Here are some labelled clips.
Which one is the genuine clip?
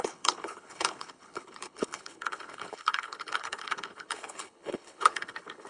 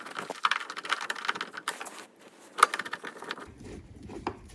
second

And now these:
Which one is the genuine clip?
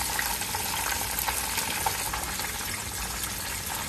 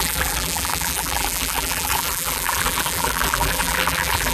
first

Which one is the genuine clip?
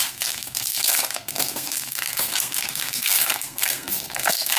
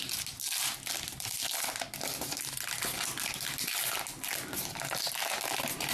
second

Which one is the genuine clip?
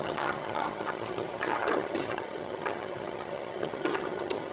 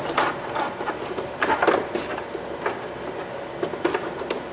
second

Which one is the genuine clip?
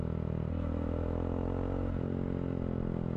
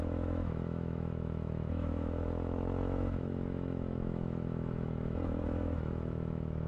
first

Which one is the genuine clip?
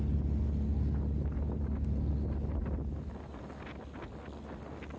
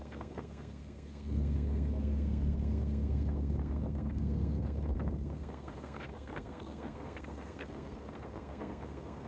first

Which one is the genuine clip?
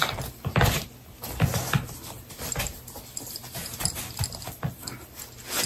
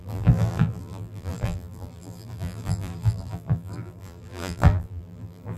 first